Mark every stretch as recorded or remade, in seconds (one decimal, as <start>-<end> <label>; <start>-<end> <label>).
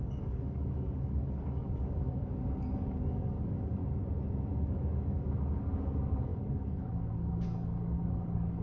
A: 0.0-3.8 remade; 3.8-4.6 recorded; 4.6-8.6 remade